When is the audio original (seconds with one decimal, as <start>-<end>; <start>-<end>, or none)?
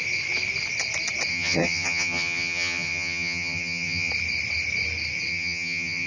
0.0-1.3; 4.1-5.3